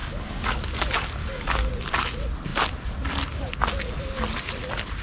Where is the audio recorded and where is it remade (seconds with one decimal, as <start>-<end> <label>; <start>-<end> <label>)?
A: 0.0-0.6 remade; 0.6-1.2 recorded; 1.2-1.7 remade; 1.7-5.0 recorded